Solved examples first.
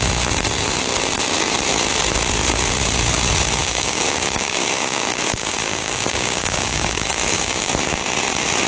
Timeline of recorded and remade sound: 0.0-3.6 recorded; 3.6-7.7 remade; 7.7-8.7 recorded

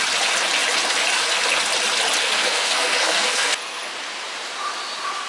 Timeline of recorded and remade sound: 0.0-2.2 recorded; 2.2-3.9 remade; 3.9-5.3 recorded

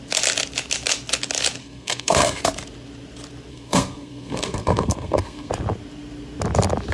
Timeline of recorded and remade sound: 0.0-1.6 recorded; 1.6-2.4 remade; 2.4-3.5 recorded; 3.5-5.5 remade; 5.5-6.9 recorded

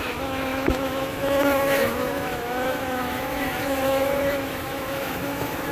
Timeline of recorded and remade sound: 0.0-5.7 remade